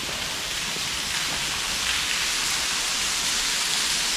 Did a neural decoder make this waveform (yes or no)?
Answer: no